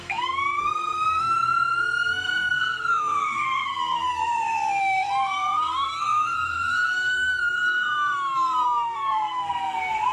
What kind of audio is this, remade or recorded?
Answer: remade